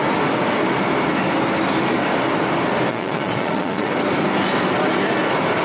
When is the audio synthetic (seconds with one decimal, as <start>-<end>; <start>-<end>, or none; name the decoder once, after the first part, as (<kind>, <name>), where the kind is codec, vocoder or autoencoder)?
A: 2.9-3.9 (vocoder, Vocos)